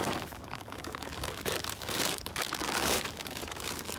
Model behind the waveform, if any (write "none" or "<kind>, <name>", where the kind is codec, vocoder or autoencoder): codec, DAC